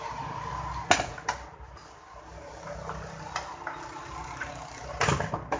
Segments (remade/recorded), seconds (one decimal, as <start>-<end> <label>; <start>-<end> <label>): 0.0-5.6 recorded